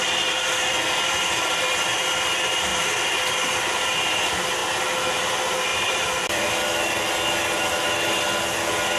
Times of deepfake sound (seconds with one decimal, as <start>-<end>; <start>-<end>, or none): 2.7-3.9; 5.7-6.4